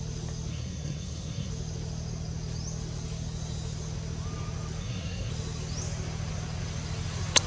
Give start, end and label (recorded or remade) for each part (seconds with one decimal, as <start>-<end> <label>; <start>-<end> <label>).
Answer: 0.0-0.5 recorded; 0.5-1.5 remade; 1.5-4.8 recorded; 4.8-5.3 remade; 5.3-7.5 recorded